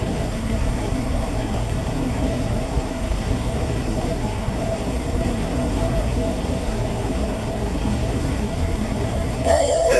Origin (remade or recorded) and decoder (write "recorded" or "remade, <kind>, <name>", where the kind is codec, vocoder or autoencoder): remade, codec, SNAC